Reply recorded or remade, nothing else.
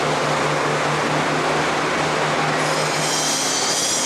recorded